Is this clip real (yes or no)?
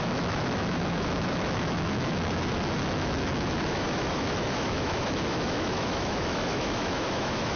no